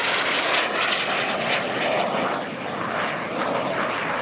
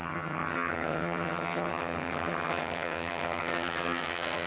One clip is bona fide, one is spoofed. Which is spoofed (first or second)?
second